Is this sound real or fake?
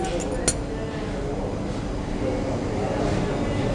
real